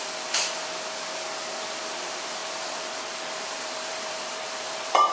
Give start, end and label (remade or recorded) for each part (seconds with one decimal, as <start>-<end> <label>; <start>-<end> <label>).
0.0-0.6 remade; 0.6-1.9 recorded; 1.9-5.1 remade

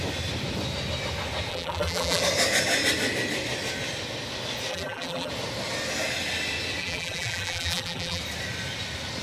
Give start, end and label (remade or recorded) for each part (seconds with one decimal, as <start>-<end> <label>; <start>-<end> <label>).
0.0-1.5 recorded; 1.5-2.2 remade; 2.2-4.7 recorded; 4.7-5.3 remade; 5.3-6.8 recorded; 6.8-8.2 remade; 8.2-9.2 recorded